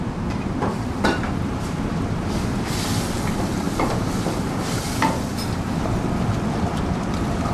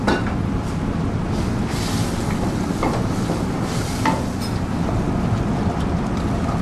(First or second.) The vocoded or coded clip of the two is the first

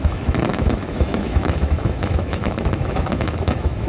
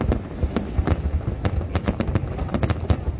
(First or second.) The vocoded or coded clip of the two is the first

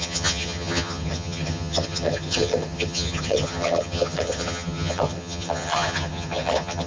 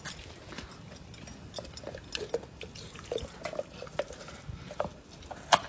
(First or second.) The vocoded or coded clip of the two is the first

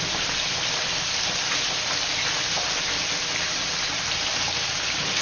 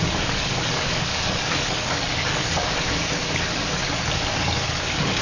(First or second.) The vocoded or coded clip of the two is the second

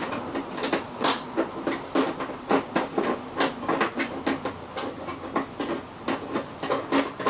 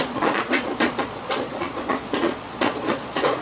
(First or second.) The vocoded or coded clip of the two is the second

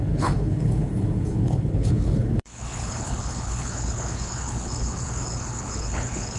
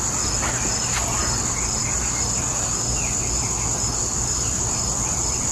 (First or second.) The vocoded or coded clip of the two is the first